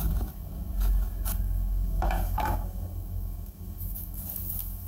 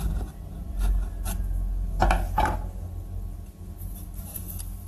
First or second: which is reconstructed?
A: first